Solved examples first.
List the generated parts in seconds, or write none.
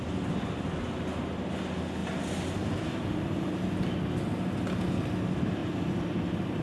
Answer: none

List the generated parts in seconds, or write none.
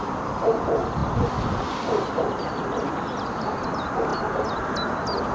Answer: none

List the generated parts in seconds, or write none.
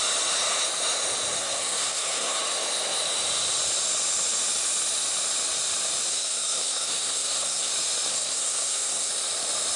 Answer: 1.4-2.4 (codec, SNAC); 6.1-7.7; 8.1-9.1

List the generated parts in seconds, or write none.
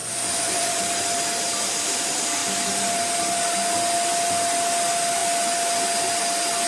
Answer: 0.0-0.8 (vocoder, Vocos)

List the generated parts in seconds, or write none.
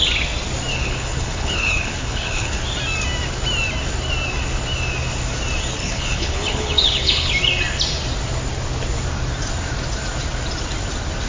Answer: 0.7-2.6 (codec, HILCodec); 5.8-7.3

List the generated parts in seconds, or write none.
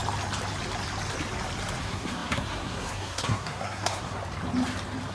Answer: 1.8-4.2 (codec, SNAC)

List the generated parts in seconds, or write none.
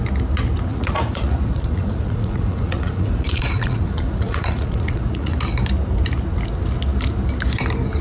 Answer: 0.7-5.4 (vocoder, Vocos)